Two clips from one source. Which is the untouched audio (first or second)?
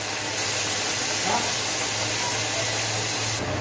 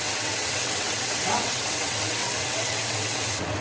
first